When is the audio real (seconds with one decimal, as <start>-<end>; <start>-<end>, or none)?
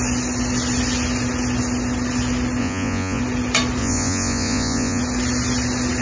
0.0-2.6; 3.2-3.8; 5.0-6.0